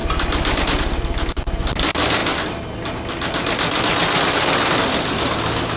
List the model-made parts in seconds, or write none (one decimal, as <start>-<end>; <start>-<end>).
none

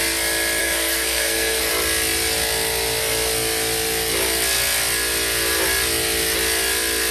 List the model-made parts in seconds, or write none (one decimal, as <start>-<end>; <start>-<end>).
0.6-1.7